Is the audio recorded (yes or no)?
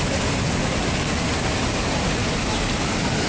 yes